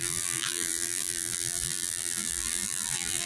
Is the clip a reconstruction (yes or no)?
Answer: yes